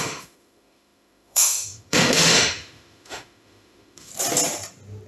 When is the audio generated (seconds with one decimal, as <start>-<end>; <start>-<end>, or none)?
0.0-4.1